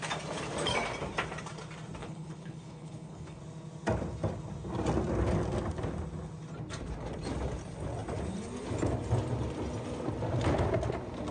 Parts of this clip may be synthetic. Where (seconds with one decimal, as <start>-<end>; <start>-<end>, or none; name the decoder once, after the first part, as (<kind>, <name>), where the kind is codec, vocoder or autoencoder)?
2.0-3.4 (codec, HILCodec)